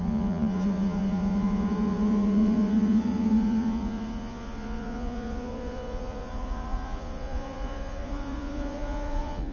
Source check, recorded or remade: remade